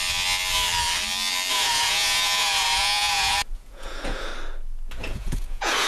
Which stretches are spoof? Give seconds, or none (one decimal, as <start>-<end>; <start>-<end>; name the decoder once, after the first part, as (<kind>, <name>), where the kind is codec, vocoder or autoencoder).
1.5-4.3 (vocoder, Vocos); 5.0-5.9

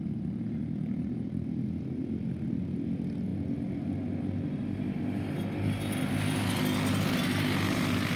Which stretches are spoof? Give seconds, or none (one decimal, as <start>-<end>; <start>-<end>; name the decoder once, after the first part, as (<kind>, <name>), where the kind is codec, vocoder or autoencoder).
none